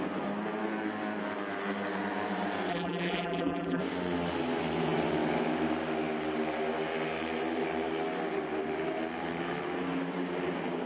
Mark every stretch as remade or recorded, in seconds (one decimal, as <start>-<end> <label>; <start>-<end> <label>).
0.0-2.7 recorded; 2.7-3.8 remade; 3.8-10.9 recorded